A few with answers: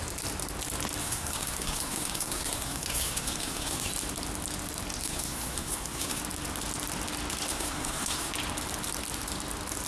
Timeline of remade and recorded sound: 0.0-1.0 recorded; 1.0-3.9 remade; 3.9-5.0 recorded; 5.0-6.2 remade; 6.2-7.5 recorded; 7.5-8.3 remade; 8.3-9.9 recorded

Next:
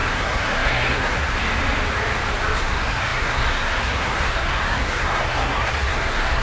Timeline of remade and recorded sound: 0.0-1.3 remade; 1.3-2.6 recorded; 2.6-6.4 remade

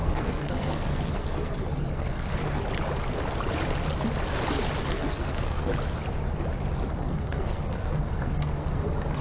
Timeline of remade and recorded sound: 0.0-2.4 remade; 2.4-4.9 recorded; 4.9-5.7 remade; 5.7-7.0 recorded; 7.0-9.2 remade

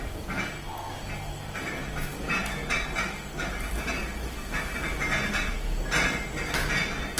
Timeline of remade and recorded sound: 0.0-7.2 recorded

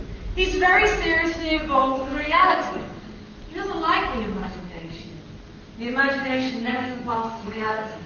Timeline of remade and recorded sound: 0.0-1.4 recorded; 1.4-3.2 remade; 3.2-4.4 recorded; 4.4-5.2 remade; 5.2-6.2 recorded; 6.2-8.1 remade

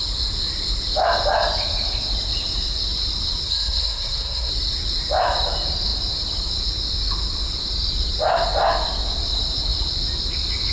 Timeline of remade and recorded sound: 0.0-3.5 recorded; 3.5-4.5 remade; 4.5-10.7 recorded

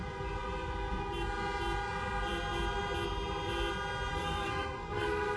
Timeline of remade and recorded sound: 0.0-4.1 recorded; 4.1-5.4 remade

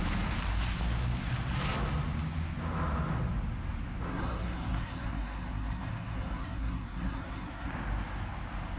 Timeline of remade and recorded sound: 0.0-4.1 recorded; 4.1-7.7 remade; 7.7-8.8 recorded